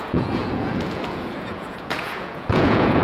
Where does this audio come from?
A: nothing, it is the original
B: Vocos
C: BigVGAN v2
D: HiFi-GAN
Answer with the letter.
B